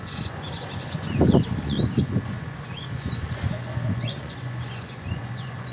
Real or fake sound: fake